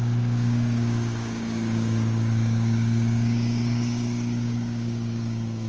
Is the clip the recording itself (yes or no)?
no